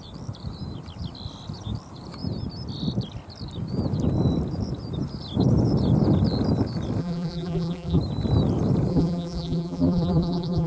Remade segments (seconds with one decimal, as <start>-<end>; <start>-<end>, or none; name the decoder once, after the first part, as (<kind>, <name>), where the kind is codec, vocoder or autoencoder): 7.0-8.0 (vocoder, BigVGAN v2); 8.9-10.7